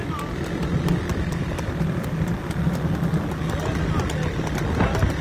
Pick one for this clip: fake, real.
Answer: real